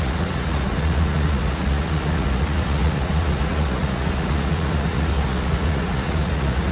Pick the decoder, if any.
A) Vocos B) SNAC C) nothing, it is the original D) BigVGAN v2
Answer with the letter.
A